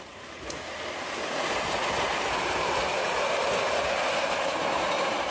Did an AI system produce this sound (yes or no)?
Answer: no